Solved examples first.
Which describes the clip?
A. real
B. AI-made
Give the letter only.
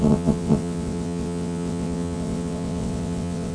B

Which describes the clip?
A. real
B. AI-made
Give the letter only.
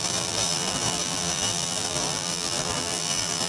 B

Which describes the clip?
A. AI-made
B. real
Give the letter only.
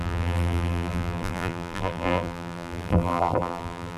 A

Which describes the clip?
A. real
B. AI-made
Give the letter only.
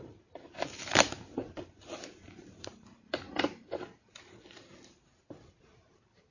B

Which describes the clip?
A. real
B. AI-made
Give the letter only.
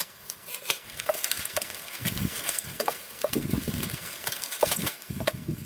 B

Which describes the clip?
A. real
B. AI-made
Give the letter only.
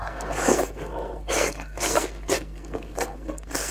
B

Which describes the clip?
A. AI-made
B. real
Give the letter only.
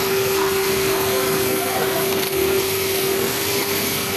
A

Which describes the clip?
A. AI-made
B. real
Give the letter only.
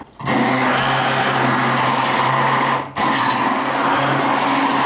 B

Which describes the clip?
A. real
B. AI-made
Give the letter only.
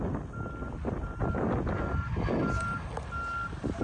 A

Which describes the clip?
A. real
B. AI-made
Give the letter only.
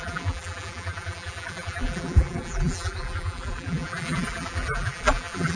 B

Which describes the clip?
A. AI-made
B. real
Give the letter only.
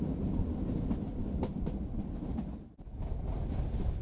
B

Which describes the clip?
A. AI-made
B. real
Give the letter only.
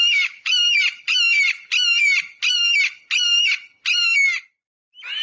B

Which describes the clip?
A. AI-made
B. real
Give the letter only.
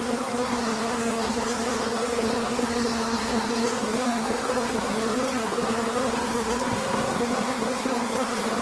A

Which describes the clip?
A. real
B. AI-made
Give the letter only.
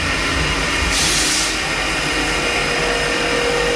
A